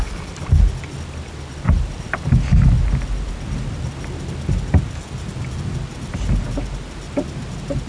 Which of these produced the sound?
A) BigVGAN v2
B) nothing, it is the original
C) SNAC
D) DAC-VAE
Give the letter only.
B